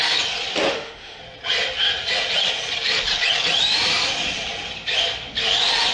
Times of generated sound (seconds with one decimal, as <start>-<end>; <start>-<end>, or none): 0.7-1.2